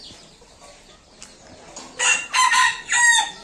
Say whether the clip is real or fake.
real